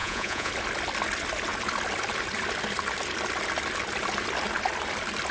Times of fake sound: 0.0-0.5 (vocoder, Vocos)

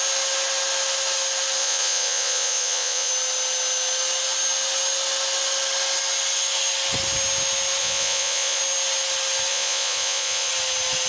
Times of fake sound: 1.6-3.1 (vocoder, Vocos); 7.8-8.6; 9.5-10.5

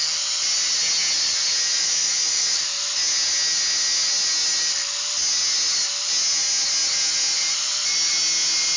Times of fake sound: 1.7-2.6 (vocoder, Vocos)

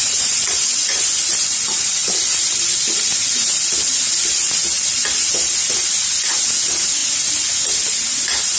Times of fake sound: 0.0-1.2 (vocoder, Vocos)

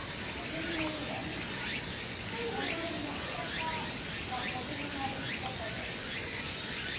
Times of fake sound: 1.0-3.4 (vocoder, Vocos); 4.6-7.0

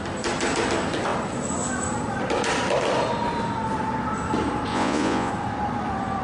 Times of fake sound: 4.7-5.3 (vocoder, Vocos)

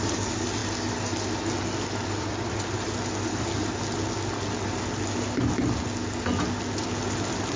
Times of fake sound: none

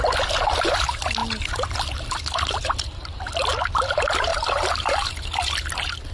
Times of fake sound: none